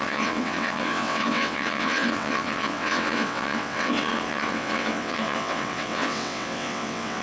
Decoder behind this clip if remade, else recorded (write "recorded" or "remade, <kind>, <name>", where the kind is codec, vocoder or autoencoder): remade, vocoder, WaveNeXt